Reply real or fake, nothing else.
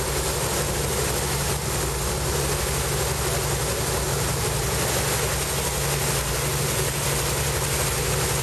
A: real